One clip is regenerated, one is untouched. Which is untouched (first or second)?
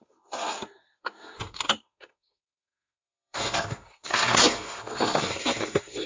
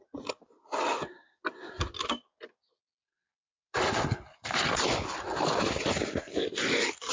second